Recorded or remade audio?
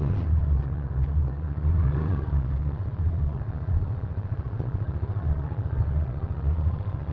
remade